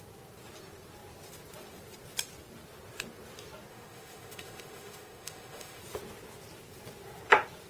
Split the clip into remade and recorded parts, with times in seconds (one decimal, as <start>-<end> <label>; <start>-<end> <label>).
0.0-3.7 recorded; 3.7-5.8 remade; 5.8-7.7 recorded